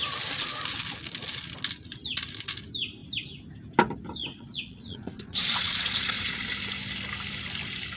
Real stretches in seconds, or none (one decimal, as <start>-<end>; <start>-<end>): 0.0-4.3; 6.5-8.0